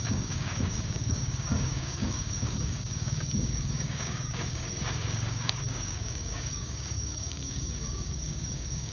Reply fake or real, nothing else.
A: fake